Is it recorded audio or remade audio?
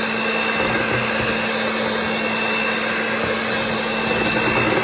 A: recorded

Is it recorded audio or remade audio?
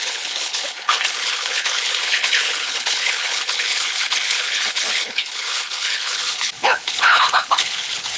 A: remade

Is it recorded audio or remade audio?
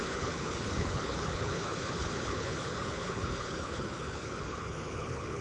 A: remade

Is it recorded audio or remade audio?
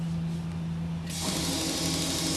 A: recorded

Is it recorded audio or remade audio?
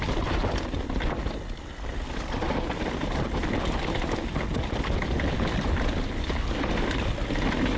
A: recorded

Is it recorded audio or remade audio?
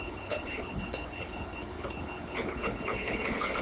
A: remade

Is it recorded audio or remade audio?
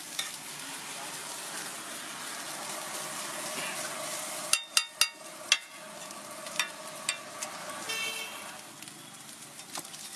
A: recorded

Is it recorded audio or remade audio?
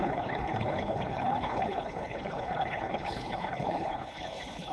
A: remade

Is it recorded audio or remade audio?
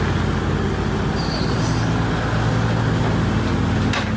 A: recorded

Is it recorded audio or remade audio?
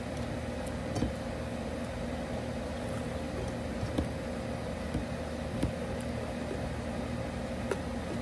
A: recorded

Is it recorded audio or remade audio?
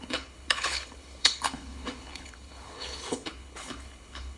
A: remade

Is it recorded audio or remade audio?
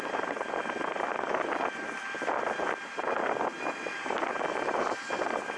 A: recorded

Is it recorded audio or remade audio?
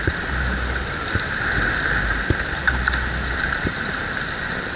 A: recorded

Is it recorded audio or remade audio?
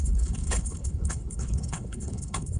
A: remade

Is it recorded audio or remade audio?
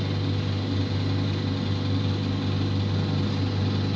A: recorded